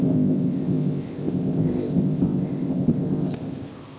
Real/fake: fake